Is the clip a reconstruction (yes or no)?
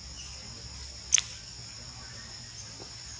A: no